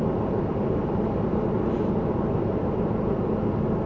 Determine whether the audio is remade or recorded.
recorded